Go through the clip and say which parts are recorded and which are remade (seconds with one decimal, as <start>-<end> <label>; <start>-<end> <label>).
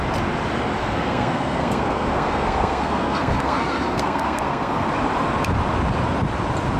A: 0.0-0.8 recorded; 0.8-4.9 remade; 4.9-6.8 recorded